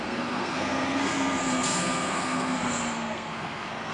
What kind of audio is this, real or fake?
fake